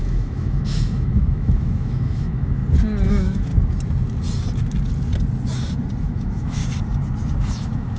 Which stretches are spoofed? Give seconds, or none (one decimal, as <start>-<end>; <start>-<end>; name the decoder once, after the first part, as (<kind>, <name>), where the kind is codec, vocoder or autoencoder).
0.0-2.6 (autoencoder, DAC-VAE); 3.1-3.5; 6.0-6.6; 7.5-8.0